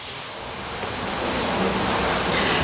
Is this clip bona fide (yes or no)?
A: yes